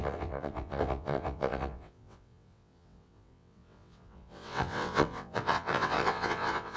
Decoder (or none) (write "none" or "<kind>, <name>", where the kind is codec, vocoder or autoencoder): vocoder, WaveNeXt